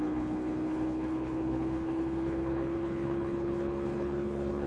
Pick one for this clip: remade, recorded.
remade